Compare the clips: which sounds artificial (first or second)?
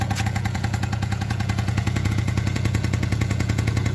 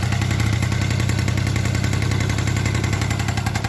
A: first